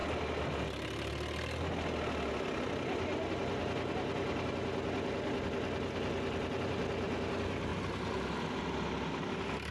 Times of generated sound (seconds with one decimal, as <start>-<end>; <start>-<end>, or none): none

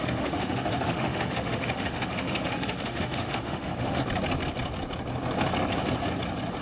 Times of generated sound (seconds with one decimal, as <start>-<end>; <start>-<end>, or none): 0.0-4.0